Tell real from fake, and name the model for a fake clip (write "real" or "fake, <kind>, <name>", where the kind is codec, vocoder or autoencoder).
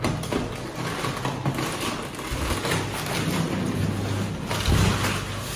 real